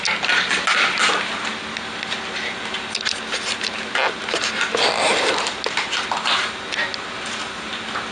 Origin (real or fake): real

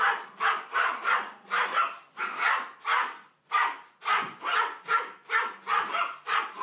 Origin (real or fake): real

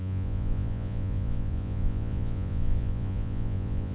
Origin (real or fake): fake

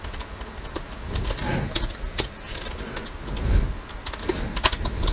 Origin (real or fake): real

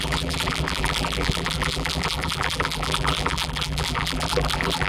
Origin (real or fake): fake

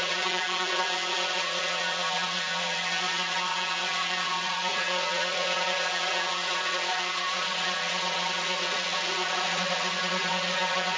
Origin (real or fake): fake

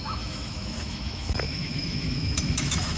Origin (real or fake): fake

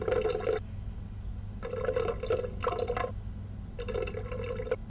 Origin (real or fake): real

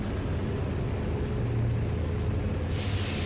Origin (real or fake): real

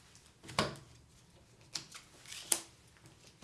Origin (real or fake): real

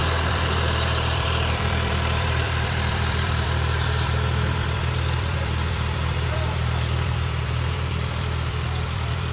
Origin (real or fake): fake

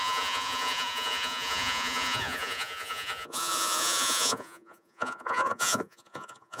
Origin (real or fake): fake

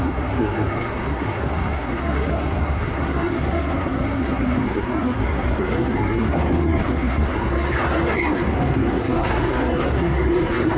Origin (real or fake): fake